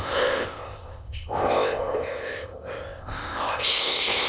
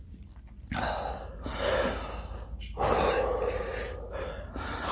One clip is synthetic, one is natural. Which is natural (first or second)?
second